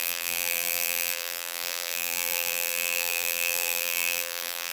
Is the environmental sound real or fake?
fake